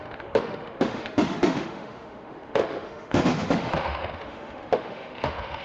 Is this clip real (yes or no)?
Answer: no